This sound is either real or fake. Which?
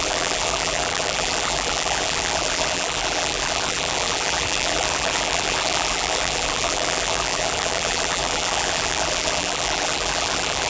fake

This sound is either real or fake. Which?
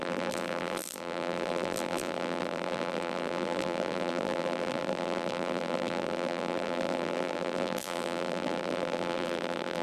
fake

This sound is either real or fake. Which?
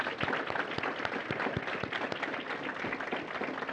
fake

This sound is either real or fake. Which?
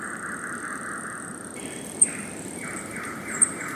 fake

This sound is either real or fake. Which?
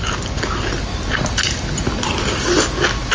real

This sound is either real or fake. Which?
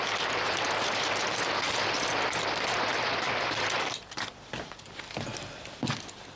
fake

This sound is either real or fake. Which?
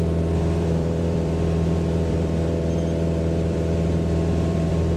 fake